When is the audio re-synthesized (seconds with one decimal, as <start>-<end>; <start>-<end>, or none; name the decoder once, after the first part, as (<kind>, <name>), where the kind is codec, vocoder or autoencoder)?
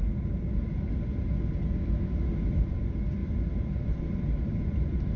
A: 1.8-2.6 (autoencoder, DAC-VAE)